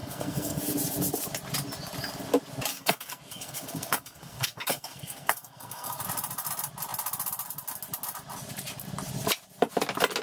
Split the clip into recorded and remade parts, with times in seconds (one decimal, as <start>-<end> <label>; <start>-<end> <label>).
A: 0.0-0.6 remade; 0.6-2.7 recorded; 2.7-6.0 remade; 6.0-10.2 recorded